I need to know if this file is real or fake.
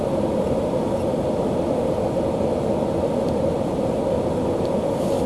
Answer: real